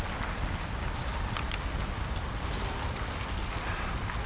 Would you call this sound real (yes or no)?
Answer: yes